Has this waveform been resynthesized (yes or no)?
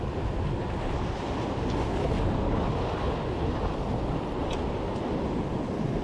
no